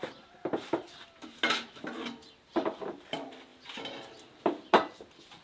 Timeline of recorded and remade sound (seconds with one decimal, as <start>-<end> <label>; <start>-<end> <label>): 0.0-5.4 recorded